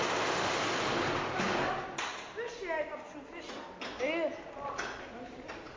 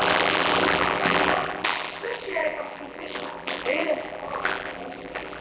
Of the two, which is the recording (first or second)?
first